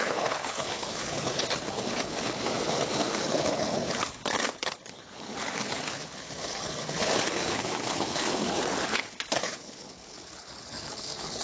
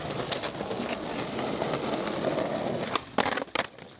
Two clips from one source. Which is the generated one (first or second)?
first